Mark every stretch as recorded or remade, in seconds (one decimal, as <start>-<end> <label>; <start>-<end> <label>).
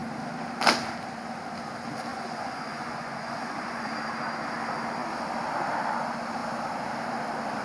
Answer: 0.0-2.1 recorded; 2.1-3.9 remade; 3.9-7.6 recorded